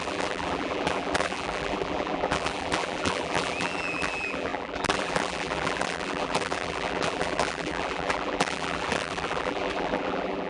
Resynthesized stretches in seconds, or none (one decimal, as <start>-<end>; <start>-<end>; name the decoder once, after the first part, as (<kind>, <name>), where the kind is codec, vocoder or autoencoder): 0.0-10.5 (vocoder, BigVGAN v2)